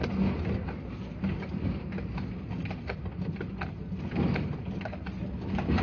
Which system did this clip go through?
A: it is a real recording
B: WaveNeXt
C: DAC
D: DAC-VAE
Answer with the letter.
A